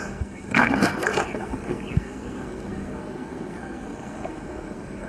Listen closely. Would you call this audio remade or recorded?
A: remade